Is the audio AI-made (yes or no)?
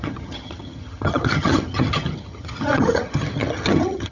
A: yes